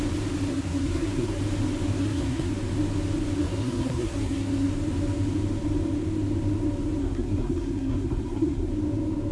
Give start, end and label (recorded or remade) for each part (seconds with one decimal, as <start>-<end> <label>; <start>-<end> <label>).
0.0-0.5 recorded; 0.5-1.4 remade; 1.4-2.0 recorded; 2.0-2.5 remade; 2.5-3.4 recorded; 3.4-4.7 remade; 4.7-7.0 recorded; 7.0-8.7 remade; 8.7-9.3 recorded